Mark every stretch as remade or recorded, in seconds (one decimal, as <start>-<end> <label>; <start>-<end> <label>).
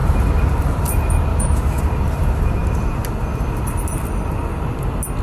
0.0-1.3 recorded; 1.3-1.8 remade; 1.8-5.2 recorded